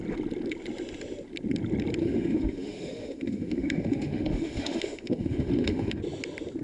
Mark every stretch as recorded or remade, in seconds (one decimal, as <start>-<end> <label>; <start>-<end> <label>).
0.0-2.0 recorded; 2.0-6.0 remade; 6.0-6.6 recorded